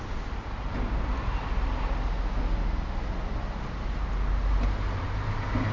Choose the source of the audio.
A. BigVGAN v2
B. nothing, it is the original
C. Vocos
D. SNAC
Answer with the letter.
B